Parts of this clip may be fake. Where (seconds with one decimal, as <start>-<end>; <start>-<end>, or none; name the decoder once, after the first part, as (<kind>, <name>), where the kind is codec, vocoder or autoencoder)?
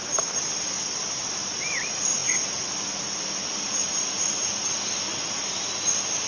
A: none